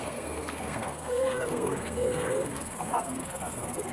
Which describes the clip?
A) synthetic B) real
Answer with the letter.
A